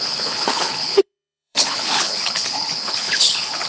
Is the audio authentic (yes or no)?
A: no